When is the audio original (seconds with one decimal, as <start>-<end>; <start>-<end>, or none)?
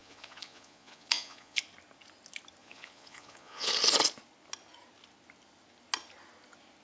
1.6-2.6; 3.7-6.8